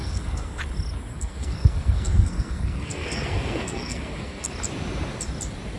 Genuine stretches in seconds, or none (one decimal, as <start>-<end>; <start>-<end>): 0.6-1.1; 4.5-5.8